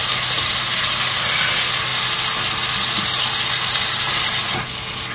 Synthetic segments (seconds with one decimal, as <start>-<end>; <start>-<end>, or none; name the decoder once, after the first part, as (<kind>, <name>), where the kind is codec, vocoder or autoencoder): none

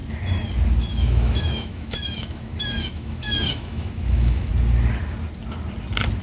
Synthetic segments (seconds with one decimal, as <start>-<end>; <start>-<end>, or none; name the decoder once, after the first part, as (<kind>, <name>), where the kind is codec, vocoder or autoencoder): 0.9-4.5 (autoencoder, DAC-VAE)

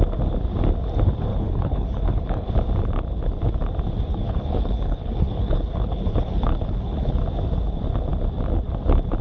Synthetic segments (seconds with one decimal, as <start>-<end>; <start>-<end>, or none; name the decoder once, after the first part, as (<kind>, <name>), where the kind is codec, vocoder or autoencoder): 1.3-2.5 (codec, HILCodec); 4.1-7.1

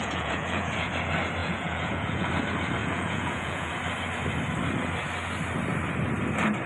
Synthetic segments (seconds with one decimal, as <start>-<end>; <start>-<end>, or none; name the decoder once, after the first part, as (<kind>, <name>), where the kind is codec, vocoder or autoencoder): 0.0-0.9 (vocoder, Vocos); 1.4-2.3; 2.8-3.7

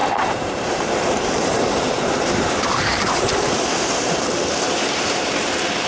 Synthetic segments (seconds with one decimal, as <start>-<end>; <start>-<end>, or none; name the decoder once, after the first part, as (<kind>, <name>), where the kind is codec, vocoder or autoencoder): 0.0-5.9 (vocoder, BigVGAN v2)

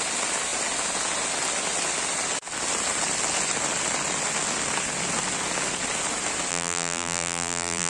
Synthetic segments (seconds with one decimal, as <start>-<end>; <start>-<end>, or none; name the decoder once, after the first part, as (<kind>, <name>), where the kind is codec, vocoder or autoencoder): 6.5-7.9 (vocoder, BigVGAN v2)

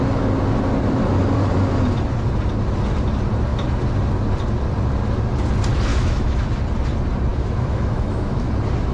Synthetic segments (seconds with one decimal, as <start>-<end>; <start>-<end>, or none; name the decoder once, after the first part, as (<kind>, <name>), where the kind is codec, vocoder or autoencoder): 5.9-6.4 (autoencoder, DAC-VAE); 7.3-8.5